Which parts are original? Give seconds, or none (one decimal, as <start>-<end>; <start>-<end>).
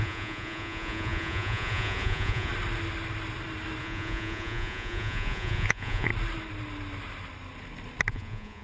2.5-3.8; 6.1-8.1